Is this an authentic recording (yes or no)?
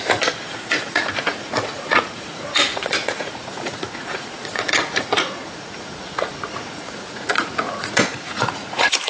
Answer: no